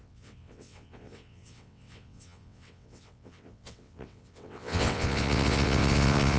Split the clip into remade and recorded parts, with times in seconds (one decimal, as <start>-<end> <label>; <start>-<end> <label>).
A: 0.0-6.4 remade